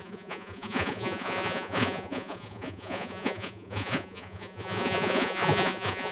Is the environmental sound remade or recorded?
remade